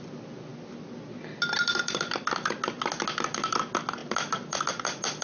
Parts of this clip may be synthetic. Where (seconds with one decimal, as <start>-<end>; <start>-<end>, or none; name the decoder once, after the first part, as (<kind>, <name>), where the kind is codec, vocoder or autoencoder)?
none

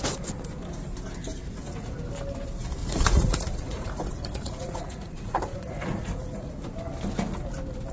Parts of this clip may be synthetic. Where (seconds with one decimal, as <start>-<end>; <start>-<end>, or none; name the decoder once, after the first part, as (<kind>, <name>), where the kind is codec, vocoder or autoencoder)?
1.4-2.0 (vocoder, Vocos); 2.8-6.5

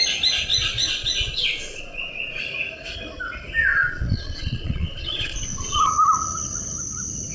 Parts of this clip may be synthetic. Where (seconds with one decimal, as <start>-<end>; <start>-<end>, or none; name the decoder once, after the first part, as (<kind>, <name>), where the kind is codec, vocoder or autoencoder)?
0.5-2.4 (vocoder, Vocos); 3.7-5.8